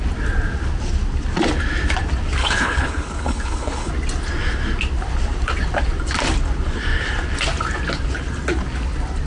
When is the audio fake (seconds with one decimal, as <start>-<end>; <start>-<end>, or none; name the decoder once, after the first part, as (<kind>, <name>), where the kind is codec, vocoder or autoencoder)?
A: 2.4-3.9 (codec, HILCodec)